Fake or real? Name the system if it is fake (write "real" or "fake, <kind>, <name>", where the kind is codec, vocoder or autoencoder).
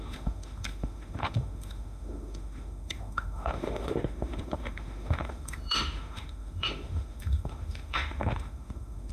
fake, autoencoder, DAC-VAE